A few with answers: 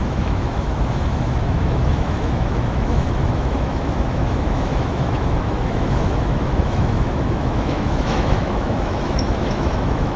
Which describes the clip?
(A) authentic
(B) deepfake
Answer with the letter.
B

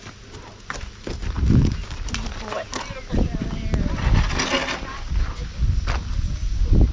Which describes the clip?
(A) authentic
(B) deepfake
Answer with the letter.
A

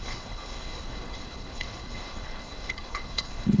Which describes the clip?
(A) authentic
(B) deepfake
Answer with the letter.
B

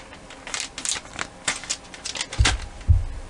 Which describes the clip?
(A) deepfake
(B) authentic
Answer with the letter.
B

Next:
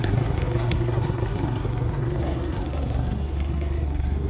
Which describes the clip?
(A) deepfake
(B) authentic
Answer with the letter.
A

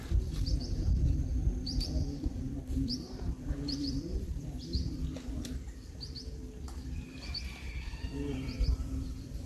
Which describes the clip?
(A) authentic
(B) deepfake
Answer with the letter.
B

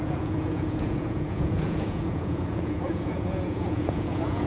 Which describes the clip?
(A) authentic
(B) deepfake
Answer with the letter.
B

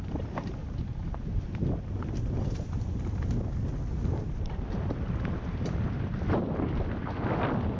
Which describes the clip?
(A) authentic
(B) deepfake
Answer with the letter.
A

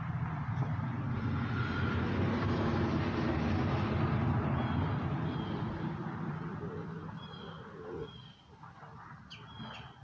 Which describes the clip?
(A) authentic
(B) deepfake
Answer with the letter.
A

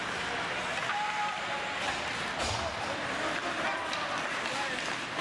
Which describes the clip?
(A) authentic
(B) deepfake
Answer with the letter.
A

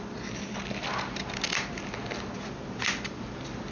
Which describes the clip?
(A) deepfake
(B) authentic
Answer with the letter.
B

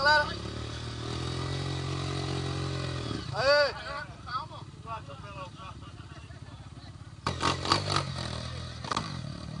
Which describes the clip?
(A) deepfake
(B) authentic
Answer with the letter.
B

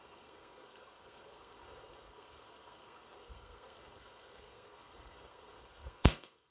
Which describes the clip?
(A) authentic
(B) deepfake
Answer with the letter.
B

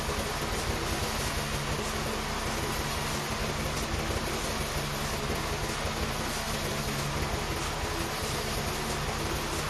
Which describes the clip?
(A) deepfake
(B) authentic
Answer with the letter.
B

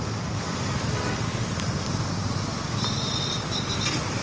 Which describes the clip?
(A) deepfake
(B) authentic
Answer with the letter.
B